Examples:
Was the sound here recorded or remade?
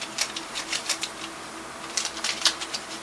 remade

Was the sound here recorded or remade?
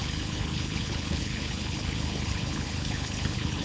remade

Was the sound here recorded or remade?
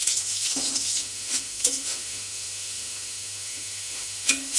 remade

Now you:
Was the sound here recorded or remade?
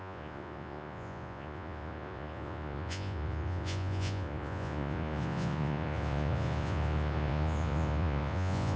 remade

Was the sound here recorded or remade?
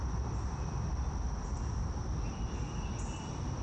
recorded